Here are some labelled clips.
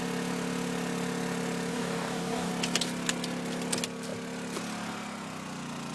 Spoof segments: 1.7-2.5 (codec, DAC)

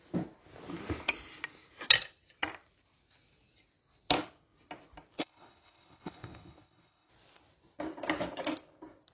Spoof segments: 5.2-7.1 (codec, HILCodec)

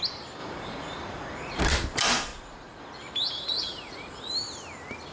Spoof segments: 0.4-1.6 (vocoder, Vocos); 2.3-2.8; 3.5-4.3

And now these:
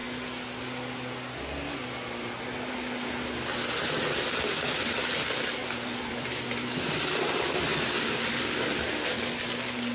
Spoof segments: 5.6-8.4 (vocoder, BigVGAN v2)

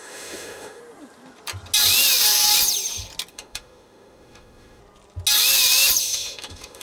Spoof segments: 0.0-0.8 (autoencoder, DAC-VAE); 3.3-4.8; 6.0-6.8

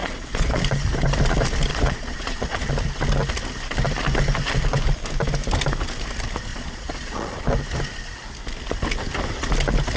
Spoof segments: 0.0-0.6 (vocoder, Vocos); 1.7-2.7; 6.5-7.4

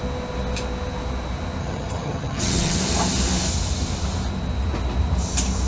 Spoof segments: 1.6-2.8 (vocoder, HiFi-GAN)